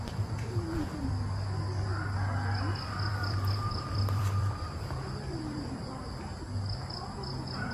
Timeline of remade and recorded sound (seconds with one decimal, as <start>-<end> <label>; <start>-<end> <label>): 0.0-3.1 recorded; 3.1-6.0 remade; 6.0-7.7 recorded